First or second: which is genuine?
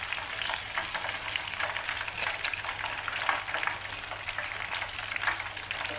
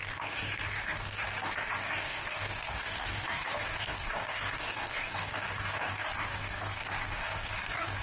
first